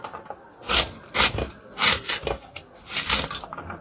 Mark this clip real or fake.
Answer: real